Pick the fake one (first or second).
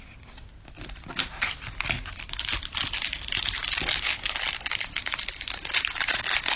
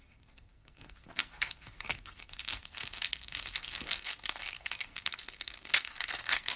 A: second